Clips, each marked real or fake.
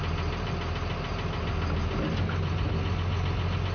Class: real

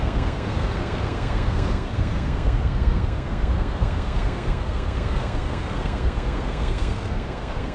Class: fake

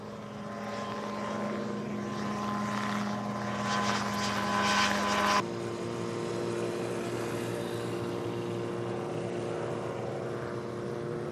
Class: real